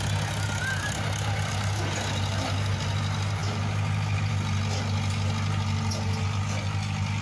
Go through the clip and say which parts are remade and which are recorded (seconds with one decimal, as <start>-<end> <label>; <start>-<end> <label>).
0.0-7.2 recorded